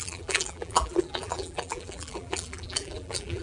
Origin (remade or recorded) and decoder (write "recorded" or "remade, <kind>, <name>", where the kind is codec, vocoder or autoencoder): remade, vocoder, BigVGAN v2